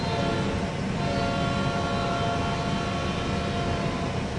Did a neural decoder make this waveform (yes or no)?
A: no